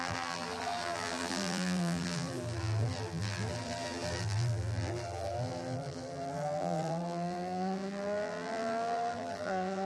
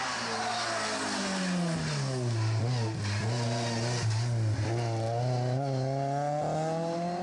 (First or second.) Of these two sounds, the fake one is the first